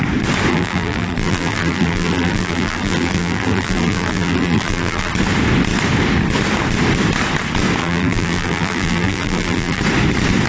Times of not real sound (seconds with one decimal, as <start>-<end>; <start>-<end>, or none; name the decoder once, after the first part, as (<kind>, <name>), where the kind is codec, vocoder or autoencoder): 0.5-5.1 (vocoder, BigVGAN v2); 7.8-9.8